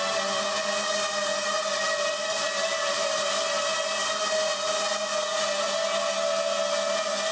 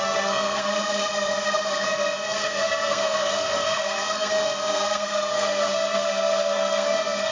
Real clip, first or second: first